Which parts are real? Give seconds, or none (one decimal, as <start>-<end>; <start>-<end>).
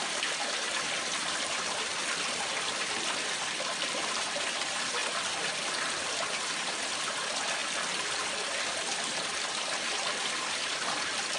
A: none